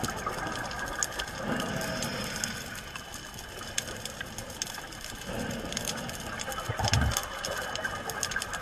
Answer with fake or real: real